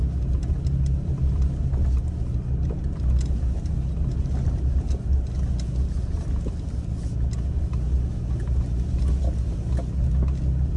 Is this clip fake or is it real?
real